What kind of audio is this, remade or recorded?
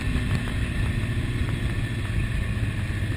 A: recorded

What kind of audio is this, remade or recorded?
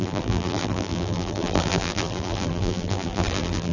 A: remade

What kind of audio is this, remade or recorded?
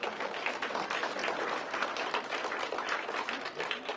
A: recorded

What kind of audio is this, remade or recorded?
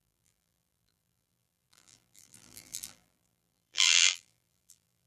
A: remade